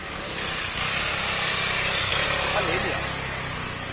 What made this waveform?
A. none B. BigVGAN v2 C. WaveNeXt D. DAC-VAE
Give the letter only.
A